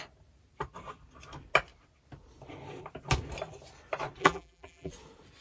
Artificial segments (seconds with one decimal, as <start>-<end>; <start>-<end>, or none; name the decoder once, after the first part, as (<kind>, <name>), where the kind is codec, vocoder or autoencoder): 4.2-4.9 (vocoder, BigVGAN v2)